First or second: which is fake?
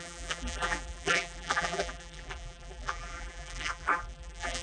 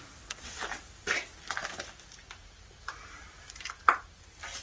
first